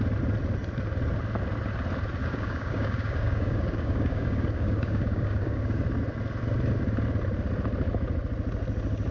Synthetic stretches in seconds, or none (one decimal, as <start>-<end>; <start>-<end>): 2.2-5.8